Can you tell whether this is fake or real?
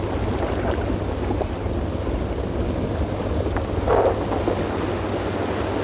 real